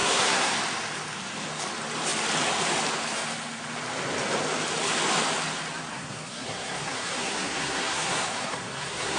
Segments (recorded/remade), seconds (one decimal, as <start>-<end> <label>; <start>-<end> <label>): 0.0-0.5 remade; 0.5-5.9 recorded; 5.9-9.2 remade